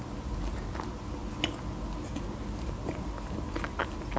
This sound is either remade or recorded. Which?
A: recorded